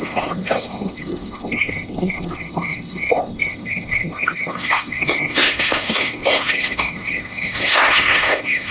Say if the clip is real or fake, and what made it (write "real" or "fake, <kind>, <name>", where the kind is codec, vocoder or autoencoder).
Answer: fake, codec, SNAC